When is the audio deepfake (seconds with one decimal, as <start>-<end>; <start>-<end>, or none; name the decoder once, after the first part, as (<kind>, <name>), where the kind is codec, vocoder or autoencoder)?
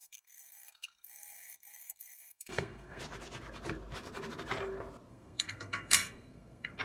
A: 0.0-3.0 (codec, SNAC); 5.1-6.8